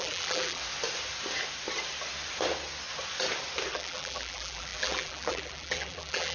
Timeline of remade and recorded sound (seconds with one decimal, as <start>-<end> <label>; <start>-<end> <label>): 0.0-0.6 remade; 0.6-3.7 recorded; 3.7-6.3 remade